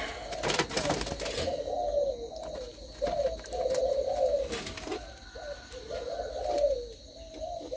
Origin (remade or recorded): recorded